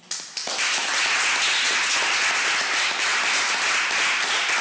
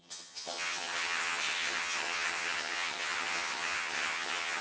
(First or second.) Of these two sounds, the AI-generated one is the second